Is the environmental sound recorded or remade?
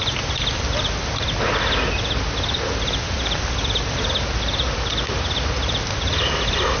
recorded